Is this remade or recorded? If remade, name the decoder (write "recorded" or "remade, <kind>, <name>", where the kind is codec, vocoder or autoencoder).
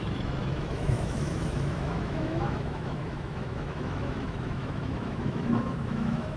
remade, autoencoder, DAC-VAE